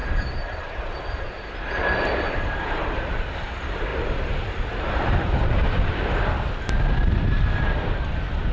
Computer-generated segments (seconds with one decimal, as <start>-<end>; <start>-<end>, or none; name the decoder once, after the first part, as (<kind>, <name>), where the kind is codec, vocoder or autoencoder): 0.0-3.1 (vocoder, BigVGAN v2); 3.9-6.0